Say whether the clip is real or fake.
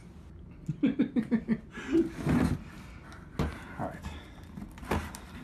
real